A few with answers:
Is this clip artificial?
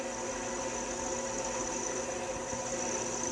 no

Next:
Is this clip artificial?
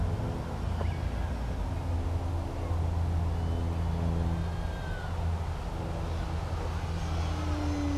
no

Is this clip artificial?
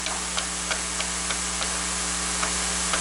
no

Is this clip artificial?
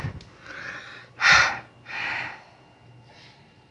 no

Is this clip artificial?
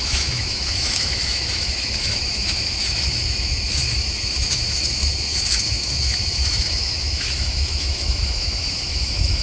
yes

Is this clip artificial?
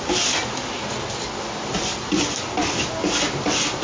no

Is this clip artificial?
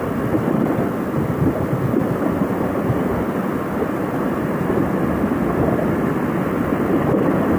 no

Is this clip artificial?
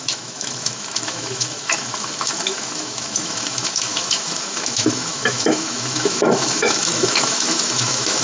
yes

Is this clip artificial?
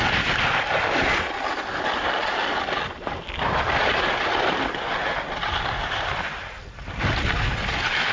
no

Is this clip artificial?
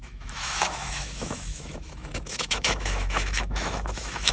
yes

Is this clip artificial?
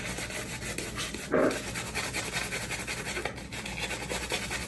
no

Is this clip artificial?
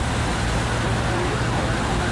no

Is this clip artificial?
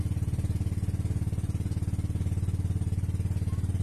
no